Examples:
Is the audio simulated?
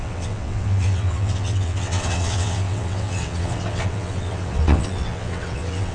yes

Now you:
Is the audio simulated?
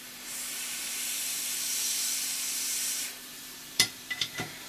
yes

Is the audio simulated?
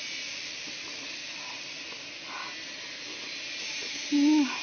no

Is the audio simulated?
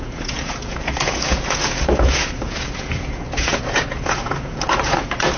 yes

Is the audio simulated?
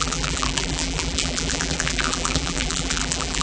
yes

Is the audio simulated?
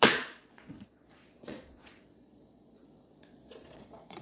yes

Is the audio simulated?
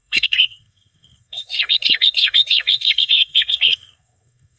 yes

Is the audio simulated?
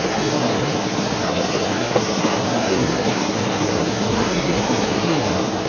yes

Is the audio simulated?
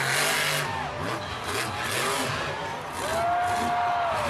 no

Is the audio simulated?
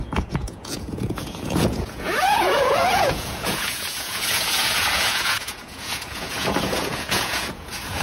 yes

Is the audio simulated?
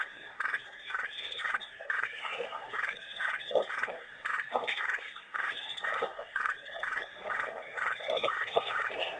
yes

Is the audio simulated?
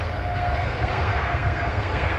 yes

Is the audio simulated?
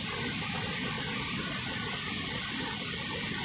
no